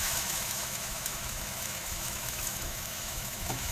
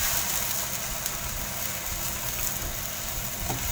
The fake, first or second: first